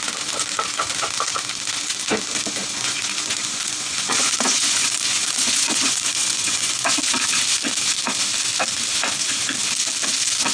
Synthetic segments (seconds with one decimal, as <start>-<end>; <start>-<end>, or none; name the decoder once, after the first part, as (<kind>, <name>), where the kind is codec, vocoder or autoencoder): 2.6-6.9 (vocoder, Vocos)